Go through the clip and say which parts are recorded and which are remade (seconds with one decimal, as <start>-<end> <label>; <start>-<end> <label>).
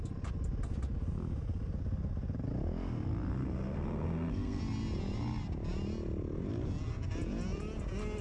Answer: 0.0-3.3 recorded; 3.3-4.6 remade; 4.6-8.2 recorded